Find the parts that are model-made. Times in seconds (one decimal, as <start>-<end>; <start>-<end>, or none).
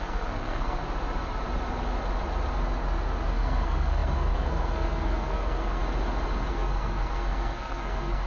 0.0-0.8; 3.3-5.8; 6.5-8.3